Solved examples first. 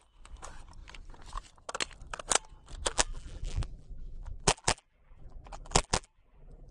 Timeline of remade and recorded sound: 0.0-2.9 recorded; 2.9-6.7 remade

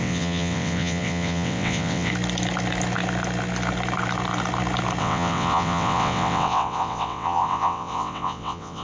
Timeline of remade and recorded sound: 0.0-2.1 remade; 2.1-5.0 recorded; 5.0-8.8 remade

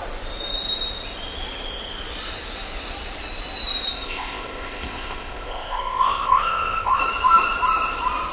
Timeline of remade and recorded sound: 0.0-3.9 recorded; 3.9-7.0 remade; 7.0-8.3 recorded

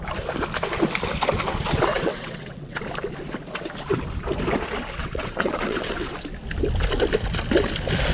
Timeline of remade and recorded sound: 0.0-1.9 recorded; 1.9-2.8 remade; 2.8-5.0 recorded; 5.0-6.1 remade; 6.1-8.1 recorded